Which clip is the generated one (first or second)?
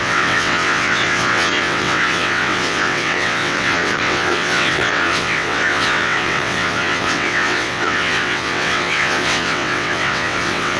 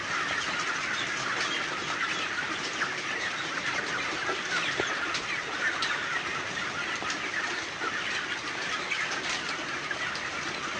first